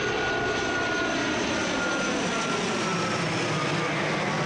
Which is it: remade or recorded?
recorded